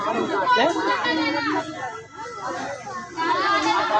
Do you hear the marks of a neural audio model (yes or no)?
no